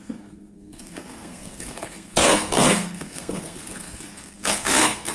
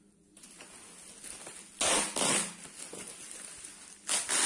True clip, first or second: second